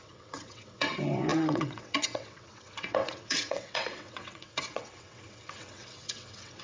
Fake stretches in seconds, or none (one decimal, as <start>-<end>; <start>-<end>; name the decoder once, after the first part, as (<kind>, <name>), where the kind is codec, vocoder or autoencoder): 0.0-6.6 (vocoder, WaveNeXt)